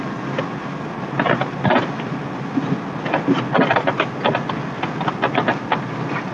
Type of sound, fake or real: real